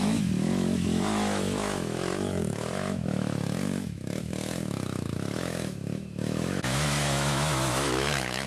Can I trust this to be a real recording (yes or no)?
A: no